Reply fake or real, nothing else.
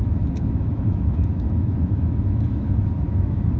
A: fake